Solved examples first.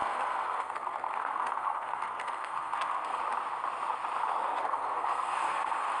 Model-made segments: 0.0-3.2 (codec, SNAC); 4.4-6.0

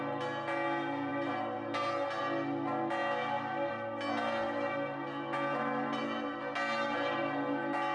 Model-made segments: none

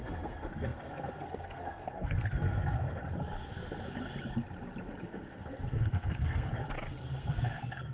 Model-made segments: 0.0-3.0 (codec, SNAC); 5.0-6.5; 7.0-7.9

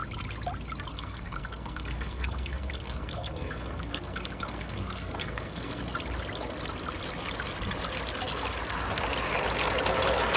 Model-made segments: 0.9-5.8 (codec, SNAC)

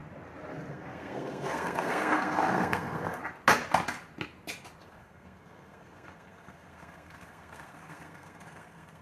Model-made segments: 0.7-3.2 (codec, SNAC); 4.8-9.0